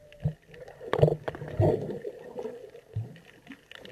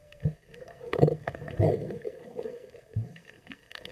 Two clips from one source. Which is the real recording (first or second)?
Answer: first